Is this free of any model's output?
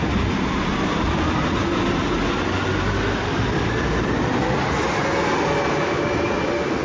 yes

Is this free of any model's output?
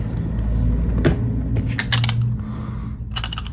yes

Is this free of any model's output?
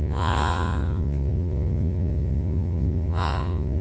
no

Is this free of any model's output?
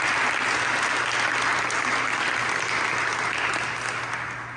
yes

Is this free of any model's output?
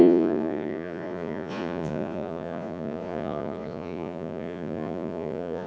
no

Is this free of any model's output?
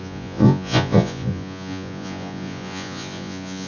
no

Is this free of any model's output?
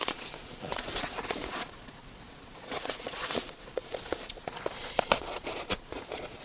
no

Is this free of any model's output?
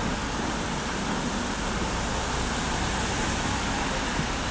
yes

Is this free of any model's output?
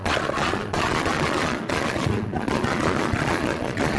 no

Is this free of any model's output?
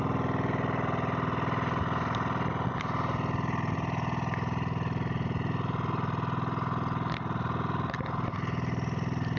yes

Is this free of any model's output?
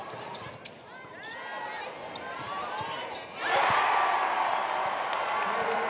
yes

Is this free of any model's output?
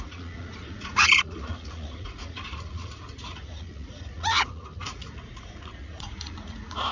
no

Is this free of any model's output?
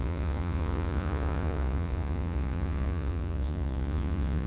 no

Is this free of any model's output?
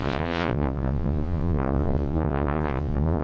no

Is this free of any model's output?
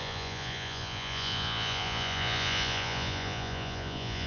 no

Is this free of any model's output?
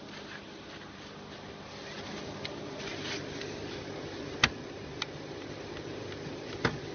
yes